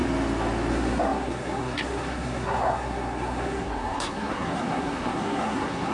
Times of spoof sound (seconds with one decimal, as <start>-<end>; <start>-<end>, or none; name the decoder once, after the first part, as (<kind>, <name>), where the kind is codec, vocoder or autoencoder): 0.7-5.9 (codec, SNAC)

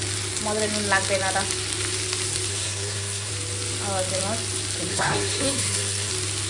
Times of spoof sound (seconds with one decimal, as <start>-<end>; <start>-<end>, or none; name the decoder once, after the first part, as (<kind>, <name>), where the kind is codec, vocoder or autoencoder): 2.5-3.3 (codec, SNAC); 4.9-6.1

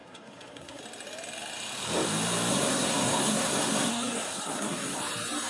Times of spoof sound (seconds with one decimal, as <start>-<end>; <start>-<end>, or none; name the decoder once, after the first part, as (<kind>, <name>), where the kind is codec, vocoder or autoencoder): 0.0-0.8 (codec, SNAC); 2.5-5.0

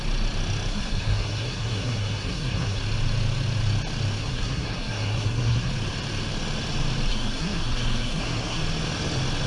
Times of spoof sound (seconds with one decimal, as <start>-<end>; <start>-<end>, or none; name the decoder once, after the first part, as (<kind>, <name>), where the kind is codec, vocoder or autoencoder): 0.7-2.8 (codec, SNAC); 4.2-5.7; 7.1-8.6